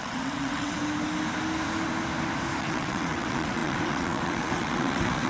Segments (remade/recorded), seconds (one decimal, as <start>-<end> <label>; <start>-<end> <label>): 0.0-0.8 remade; 0.8-2.6 recorded; 2.6-5.3 remade

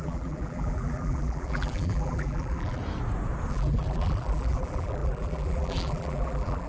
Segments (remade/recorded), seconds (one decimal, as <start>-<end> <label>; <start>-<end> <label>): 0.0-2.8 remade; 2.8-3.5 recorded; 3.5-6.7 remade

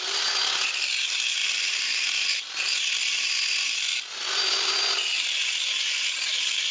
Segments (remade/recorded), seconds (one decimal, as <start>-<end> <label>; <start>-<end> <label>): 0.0-6.7 recorded

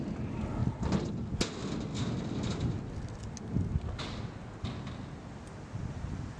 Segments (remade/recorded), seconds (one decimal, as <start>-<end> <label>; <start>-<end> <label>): 0.0-6.4 recorded

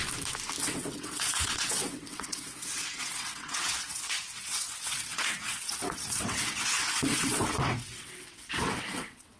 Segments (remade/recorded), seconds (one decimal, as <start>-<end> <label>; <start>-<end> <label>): 0.0-0.6 recorded; 0.6-9.4 remade